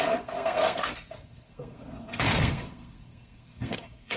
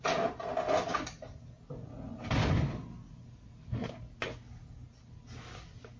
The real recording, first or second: second